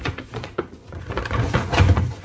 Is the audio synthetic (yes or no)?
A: yes